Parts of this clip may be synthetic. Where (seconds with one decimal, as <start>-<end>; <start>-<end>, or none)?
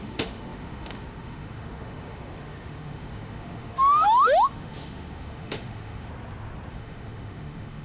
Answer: 0.0-6.1; 6.7-7.8